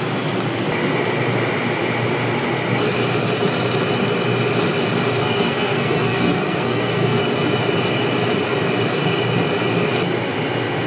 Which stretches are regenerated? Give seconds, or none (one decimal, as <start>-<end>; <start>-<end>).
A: 5.2-7.2